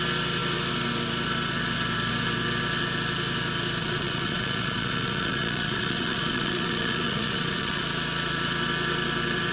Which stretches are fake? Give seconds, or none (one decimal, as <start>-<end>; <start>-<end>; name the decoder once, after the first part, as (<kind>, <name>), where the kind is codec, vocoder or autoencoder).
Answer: 3.8-7.8 (vocoder, Vocos)